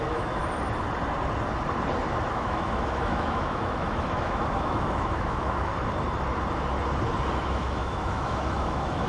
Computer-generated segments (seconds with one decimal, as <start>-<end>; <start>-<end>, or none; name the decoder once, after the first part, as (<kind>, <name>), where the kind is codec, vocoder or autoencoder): 0.0-0.4 (autoencoder, DAC-VAE); 2.3-5.7; 7.3-9.1